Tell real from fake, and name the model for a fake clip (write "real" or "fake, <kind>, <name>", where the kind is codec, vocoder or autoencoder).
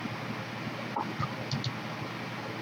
real